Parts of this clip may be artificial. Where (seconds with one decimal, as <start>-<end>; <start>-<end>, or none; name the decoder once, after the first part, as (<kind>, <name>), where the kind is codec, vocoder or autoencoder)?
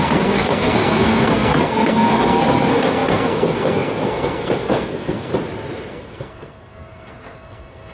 0.0-5.3 (codec, SNAC); 5.9-7.9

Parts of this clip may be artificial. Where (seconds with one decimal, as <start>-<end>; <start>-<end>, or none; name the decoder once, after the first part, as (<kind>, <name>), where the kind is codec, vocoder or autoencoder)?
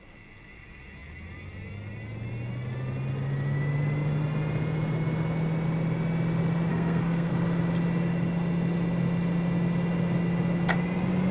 6.7-7.3 (codec, SNAC)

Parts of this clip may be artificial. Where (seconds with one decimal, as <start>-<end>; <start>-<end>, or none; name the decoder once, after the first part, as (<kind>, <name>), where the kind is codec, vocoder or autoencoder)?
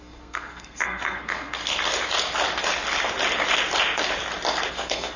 0.0-1.6 (codec, SNAC); 4.7-5.2